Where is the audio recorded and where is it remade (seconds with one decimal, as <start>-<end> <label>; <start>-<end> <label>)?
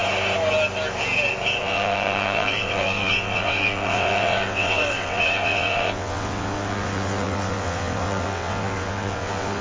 0.0-1.6 recorded; 1.6-9.6 remade